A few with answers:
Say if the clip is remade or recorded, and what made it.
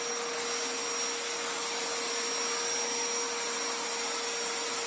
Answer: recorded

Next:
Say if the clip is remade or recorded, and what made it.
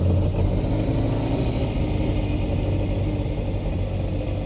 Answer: recorded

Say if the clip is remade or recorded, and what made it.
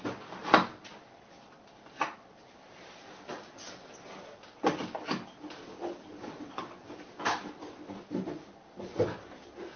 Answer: recorded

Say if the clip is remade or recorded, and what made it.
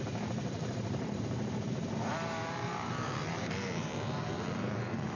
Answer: remade, vocoder, BigVGAN v2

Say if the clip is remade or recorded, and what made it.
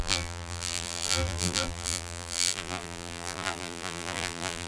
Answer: remade, vocoder, BigVGAN v2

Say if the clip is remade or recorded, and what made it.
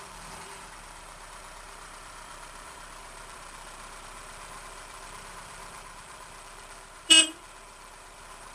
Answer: remade, vocoder, BigVGAN v2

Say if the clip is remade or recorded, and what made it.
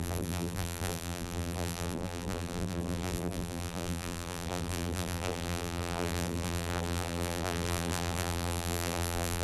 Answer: remade, vocoder, BigVGAN v2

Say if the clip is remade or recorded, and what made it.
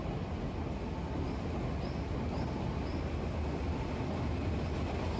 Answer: recorded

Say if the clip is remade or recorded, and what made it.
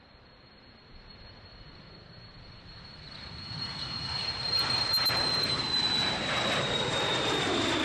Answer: remade, vocoder, BigVGAN v2